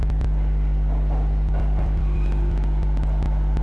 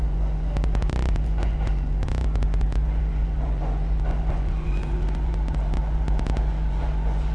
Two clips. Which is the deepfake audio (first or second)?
second